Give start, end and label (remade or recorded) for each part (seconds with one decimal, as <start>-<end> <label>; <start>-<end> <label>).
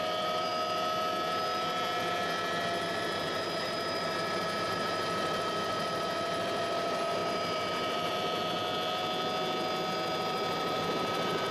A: 0.0-0.5 remade; 0.5-2.8 recorded; 2.8-8.6 remade; 8.6-10.2 recorded; 10.2-11.5 remade